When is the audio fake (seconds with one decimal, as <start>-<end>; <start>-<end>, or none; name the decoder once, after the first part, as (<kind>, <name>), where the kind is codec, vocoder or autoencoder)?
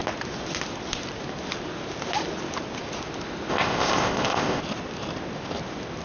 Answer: 3.5-4.6 (codec, ZipCodec)